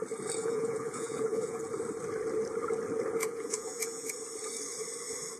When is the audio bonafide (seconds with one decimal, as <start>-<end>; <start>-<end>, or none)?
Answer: 0.0-0.4; 1.6-3.2; 4.1-5.4

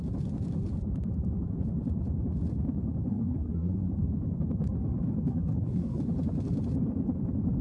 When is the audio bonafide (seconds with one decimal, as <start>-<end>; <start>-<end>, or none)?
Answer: 0.0-3.1; 3.9-5.3; 6.0-7.6

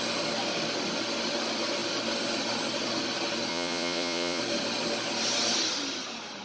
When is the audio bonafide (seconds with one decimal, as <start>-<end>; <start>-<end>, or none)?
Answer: 0.0-3.5; 4.4-6.4

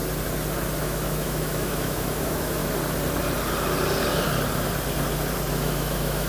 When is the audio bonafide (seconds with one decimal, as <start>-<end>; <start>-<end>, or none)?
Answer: 0.0-0.8; 2.6-5.5